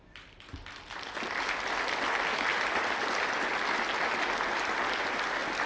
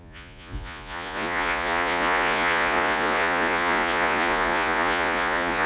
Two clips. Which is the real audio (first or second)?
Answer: first